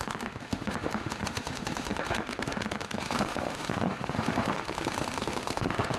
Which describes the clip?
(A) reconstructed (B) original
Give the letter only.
A